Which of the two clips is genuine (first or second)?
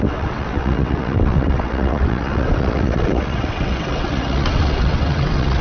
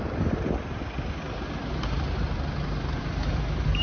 second